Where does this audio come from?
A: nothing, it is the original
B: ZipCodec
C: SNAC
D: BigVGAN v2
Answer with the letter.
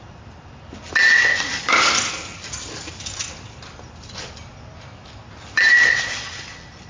A